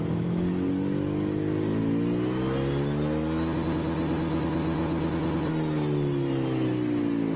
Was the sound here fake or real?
real